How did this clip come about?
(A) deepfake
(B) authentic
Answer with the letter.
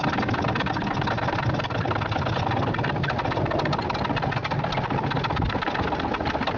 B